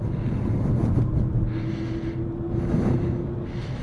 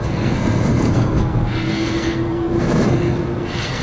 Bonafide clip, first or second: first